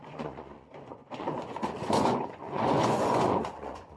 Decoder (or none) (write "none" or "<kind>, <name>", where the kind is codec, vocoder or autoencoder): vocoder, Vocos